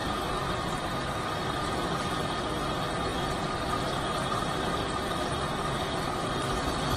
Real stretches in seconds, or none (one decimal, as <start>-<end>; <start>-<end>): 0.0-7.0